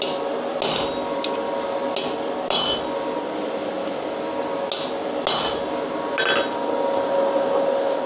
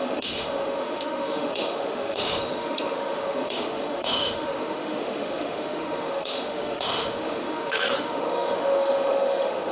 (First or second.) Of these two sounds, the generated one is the second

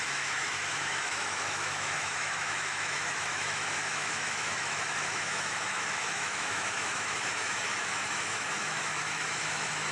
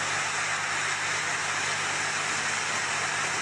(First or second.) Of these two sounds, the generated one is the first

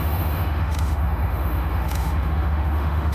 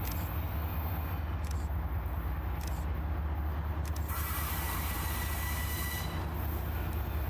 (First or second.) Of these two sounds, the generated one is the first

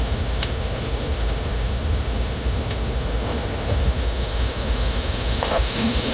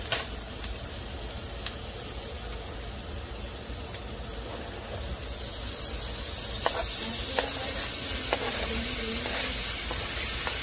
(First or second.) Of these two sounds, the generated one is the first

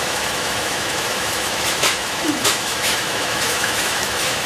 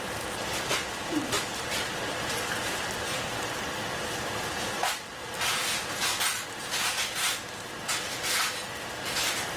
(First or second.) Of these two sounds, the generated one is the first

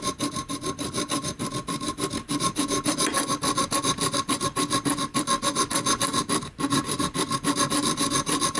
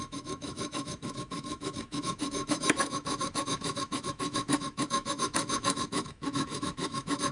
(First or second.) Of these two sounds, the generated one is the second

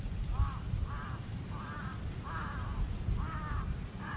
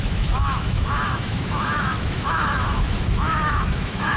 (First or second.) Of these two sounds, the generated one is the second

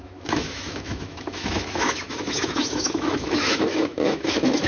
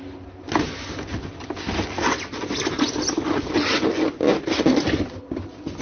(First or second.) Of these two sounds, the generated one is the first